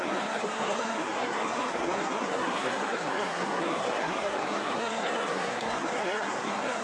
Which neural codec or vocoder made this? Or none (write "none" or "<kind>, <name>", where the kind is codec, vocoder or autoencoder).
codec, SNAC